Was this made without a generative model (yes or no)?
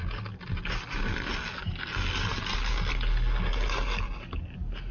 yes